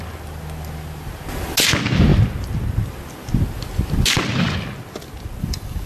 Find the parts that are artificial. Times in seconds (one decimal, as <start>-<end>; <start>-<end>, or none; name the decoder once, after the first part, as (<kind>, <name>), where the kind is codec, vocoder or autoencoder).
5.4-5.9 (codec, DAC)